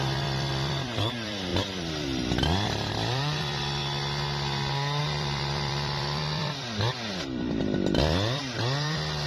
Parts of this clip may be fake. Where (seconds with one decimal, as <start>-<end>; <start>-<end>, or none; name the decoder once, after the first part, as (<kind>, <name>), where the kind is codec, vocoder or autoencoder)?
0.0-3.8 (vocoder, BigVGAN v2); 5.0-9.3